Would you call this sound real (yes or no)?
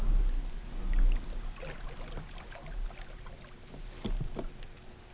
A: yes